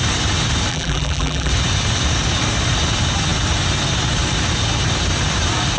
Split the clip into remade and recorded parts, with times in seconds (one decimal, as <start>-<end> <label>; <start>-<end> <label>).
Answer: 0.0-0.7 recorded; 0.7-1.5 remade; 1.5-5.8 recorded